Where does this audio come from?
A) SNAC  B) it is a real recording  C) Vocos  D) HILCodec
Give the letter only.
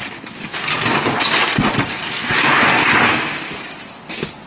B